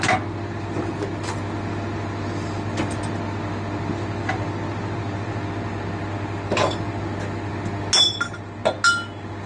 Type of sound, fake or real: real